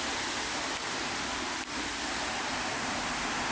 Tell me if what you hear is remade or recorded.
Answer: recorded